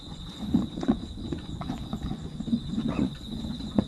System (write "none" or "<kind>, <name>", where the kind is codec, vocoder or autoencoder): vocoder, Vocos